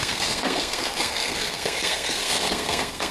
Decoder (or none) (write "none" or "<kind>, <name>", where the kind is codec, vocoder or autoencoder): codec, SNAC